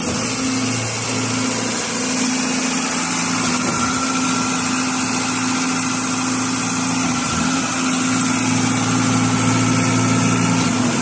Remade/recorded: recorded